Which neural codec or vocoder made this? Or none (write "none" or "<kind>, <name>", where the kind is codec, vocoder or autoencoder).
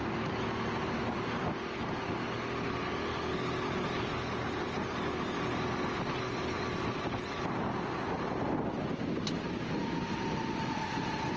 none